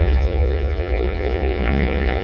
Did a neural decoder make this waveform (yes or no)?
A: yes